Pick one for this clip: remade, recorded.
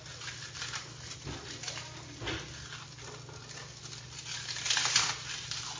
recorded